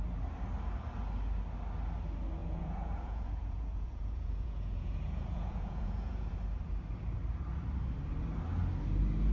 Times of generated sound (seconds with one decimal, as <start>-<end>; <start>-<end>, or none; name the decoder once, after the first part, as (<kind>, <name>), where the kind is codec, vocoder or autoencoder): 2.4-6.3 (vocoder, Vocos)